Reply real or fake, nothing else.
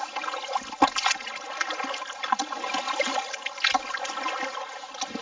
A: real